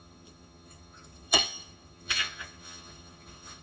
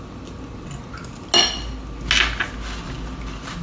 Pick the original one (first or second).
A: second